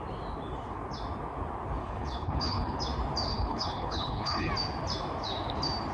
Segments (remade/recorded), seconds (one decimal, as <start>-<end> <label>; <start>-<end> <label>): 0.0-1.8 recorded; 1.8-2.8 remade; 2.8-3.3 recorded; 3.3-4.5 remade; 4.5-5.9 recorded